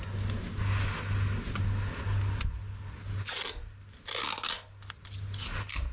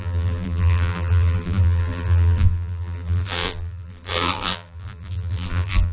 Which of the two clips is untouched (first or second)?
first